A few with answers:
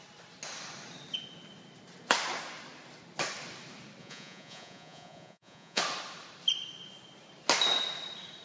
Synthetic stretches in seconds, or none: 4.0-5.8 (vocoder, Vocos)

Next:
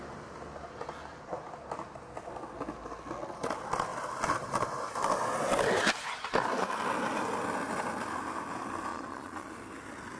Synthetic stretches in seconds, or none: 8.9-9.5 (vocoder, Vocos)

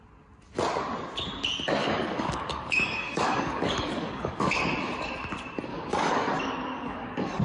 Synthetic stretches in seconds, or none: 1.8-4.6 (codec, DAC); 5.7-7.4

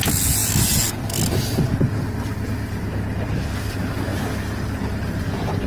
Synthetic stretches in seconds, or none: none

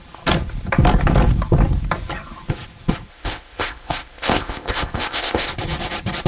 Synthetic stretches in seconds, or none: 3.1-5.5 (codec, ZipCodec)

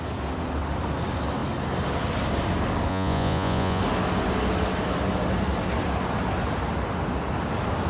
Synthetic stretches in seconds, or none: 2.9-3.8 (vocoder, Vocos)